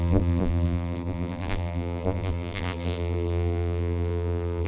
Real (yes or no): no